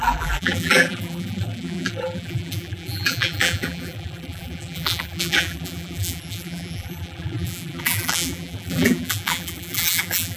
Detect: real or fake fake